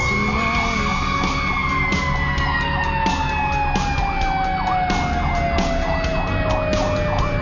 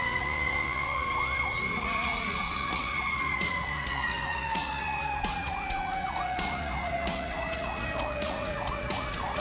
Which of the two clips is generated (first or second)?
second